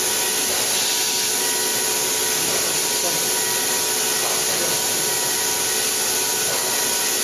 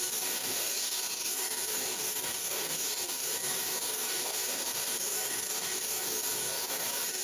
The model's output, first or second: second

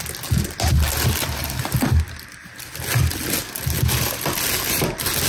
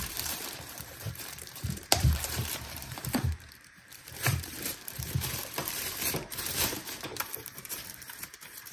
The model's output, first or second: second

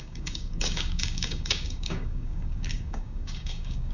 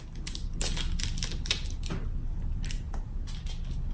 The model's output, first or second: first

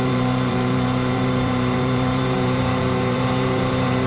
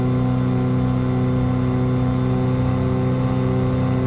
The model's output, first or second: first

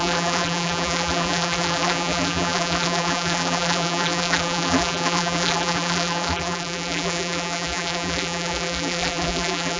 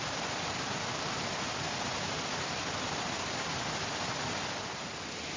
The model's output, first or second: first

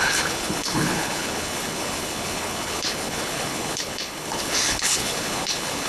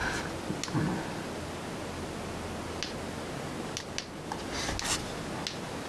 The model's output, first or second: first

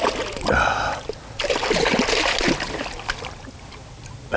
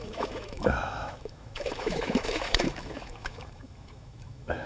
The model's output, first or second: second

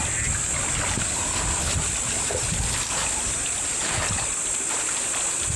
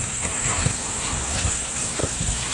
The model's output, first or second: second